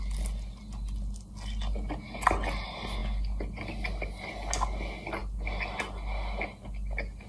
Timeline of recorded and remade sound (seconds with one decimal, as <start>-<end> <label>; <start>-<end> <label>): 0.0-7.3 recorded